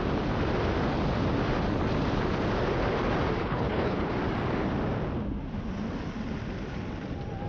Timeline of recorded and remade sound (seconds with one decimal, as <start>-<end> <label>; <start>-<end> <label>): 0.0-3.4 recorded; 3.4-4.1 remade; 4.1-7.5 recorded